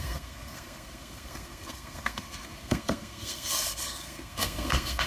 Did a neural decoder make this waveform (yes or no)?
yes